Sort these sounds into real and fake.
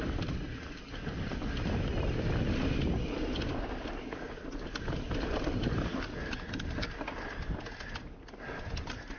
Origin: real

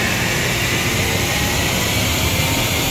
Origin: real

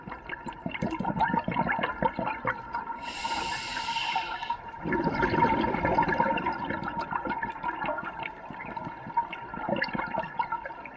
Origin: fake